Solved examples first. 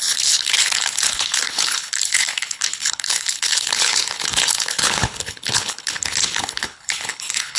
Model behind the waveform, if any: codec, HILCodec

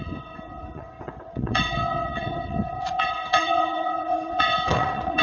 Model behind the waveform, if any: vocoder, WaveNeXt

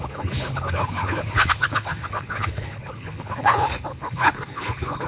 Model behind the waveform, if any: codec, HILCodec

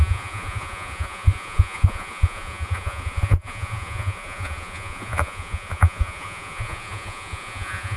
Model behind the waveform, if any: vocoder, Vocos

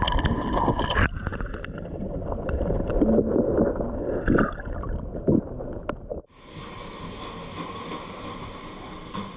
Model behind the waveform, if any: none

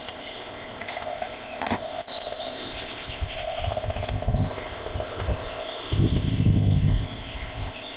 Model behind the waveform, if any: codec, ZipCodec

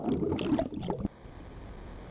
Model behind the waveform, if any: none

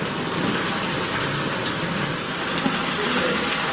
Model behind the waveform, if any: none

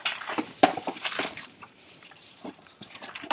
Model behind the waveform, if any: vocoder, BigVGAN v2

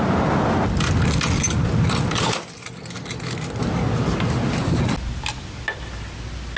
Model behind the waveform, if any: none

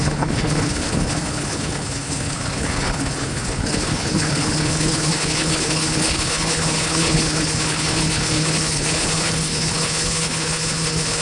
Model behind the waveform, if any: codec, HILCodec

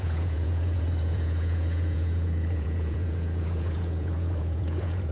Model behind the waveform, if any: vocoder, Vocos